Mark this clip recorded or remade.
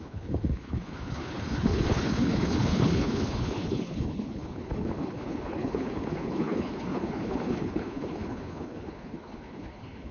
remade